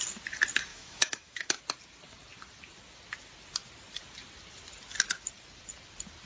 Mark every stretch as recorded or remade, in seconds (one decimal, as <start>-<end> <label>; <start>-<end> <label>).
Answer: 0.0-0.7 recorded; 0.7-1.6 remade; 1.6-6.3 recorded